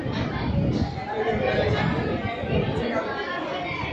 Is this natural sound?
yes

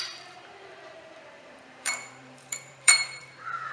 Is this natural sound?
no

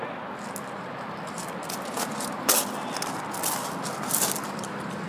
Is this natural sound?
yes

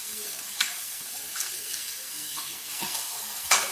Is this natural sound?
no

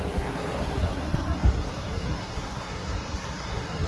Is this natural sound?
no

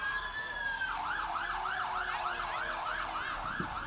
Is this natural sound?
yes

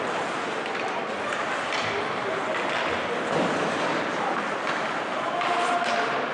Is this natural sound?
no